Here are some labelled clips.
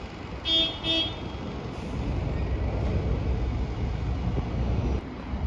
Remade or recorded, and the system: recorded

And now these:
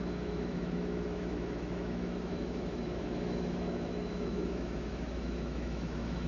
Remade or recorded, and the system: remade, autoencoder, DAC-VAE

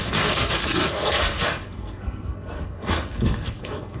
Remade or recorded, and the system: remade, codec, SNAC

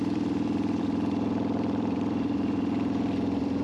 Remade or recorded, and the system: remade, vocoder, BigVGAN v2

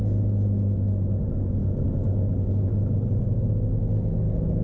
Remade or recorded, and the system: recorded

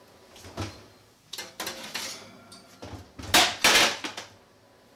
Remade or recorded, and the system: recorded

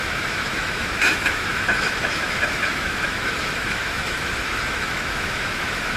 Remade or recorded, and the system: remade, autoencoder, DAC-VAE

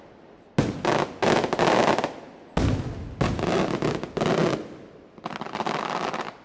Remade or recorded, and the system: recorded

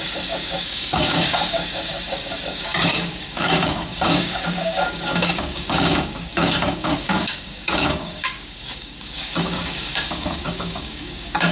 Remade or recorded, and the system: remade, codec, DAC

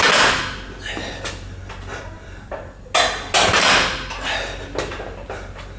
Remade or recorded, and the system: recorded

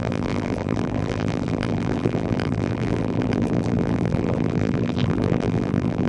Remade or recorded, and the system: remade, vocoder, BigVGAN v2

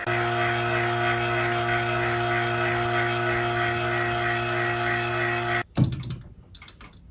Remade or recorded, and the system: recorded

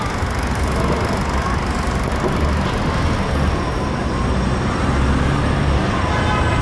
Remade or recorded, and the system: recorded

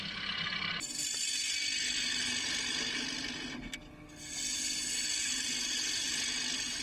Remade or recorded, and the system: recorded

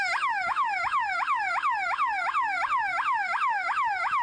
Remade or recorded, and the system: remade, autoencoder, DAC-VAE